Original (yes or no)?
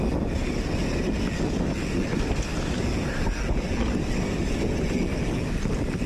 yes